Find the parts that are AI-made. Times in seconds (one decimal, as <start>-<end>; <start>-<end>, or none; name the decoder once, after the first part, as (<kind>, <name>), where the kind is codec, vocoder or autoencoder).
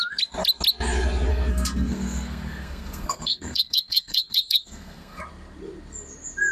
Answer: 1.3-5.2 (codec, SNAC)